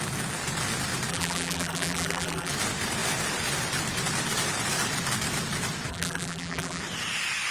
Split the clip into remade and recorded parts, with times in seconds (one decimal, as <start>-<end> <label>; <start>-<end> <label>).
0.0-1.1 recorded; 1.1-2.5 remade; 2.5-5.9 recorded; 5.9-6.8 remade; 6.8-7.5 recorded